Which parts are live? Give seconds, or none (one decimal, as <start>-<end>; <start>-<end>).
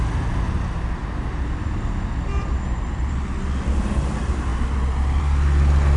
0.0-6.0